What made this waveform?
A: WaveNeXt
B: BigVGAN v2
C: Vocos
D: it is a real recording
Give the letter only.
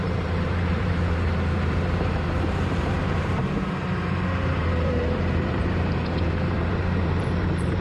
B